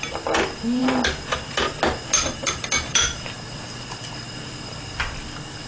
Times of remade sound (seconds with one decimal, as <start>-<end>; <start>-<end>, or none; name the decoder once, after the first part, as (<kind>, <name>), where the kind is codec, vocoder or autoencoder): none